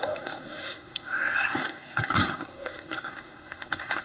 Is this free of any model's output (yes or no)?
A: no